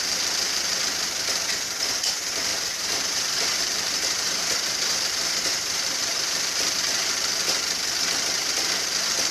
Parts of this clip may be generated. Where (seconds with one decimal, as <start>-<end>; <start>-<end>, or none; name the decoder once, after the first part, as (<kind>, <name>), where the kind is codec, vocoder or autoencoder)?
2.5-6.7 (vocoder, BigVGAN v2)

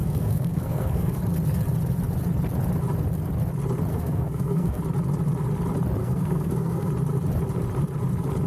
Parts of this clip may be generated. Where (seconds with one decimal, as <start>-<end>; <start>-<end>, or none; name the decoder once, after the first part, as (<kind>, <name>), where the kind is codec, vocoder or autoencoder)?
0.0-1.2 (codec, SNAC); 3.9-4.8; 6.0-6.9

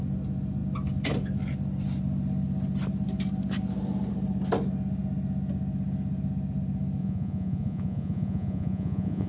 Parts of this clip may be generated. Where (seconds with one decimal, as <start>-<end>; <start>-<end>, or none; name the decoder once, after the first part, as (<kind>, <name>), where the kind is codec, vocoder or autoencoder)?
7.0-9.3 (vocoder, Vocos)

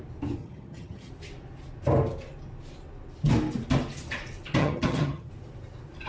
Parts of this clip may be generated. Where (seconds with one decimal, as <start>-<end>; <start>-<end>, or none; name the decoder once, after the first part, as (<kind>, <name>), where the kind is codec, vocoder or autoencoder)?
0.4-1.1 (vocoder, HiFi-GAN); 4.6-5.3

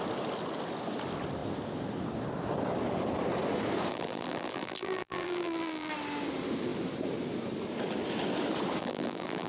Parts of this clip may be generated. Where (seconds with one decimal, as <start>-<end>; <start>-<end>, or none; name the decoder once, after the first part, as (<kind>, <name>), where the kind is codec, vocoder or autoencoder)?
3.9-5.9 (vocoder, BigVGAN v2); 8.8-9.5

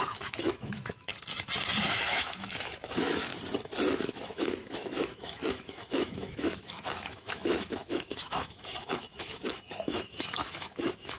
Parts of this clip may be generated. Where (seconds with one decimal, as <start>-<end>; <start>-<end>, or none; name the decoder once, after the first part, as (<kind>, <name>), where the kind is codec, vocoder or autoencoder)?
0.0-1.1 (autoencoder, DAC-VAE); 1.8-3.3; 3.9-11.2